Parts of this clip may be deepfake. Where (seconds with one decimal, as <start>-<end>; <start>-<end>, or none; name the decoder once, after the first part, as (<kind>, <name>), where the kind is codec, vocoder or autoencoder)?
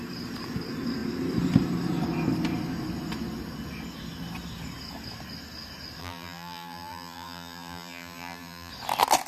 6.0-8.7 (vocoder, BigVGAN v2)